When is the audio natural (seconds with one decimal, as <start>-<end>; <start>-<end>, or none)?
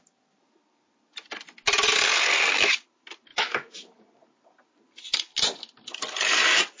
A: 0.0-3.3; 3.9-6.8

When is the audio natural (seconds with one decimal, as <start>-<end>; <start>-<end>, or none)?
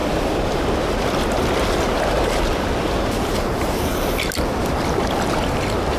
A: 0.0-6.0